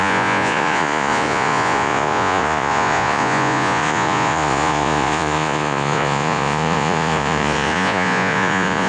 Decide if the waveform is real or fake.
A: fake